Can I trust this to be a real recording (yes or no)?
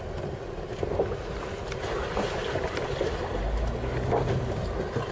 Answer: yes